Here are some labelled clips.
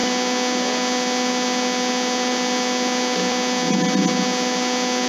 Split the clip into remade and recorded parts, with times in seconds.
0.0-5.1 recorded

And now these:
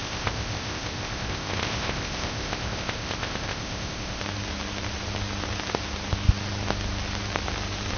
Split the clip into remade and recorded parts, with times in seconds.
0.0-4.2 remade; 4.2-8.0 recorded

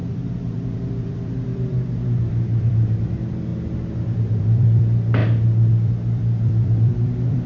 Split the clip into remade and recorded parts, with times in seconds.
0.0-5.2 remade; 5.2-5.7 recorded; 5.7-7.5 remade

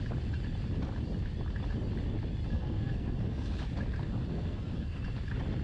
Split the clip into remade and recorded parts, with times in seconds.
0.0-2.5 recorded; 2.5-3.5 remade; 3.5-4.3 recorded; 4.3-5.0 remade; 5.0-5.6 recorded

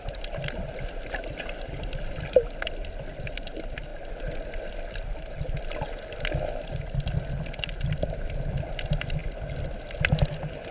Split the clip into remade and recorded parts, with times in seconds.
0.0-10.7 recorded

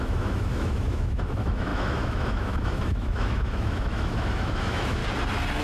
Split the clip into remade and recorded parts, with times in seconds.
0.0-5.0 remade; 5.0-5.6 recorded